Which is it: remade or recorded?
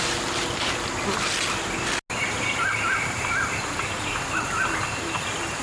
recorded